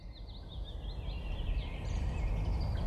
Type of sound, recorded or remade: recorded